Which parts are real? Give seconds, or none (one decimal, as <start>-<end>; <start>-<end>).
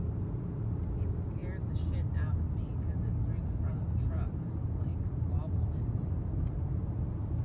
0.0-4.9; 5.5-7.4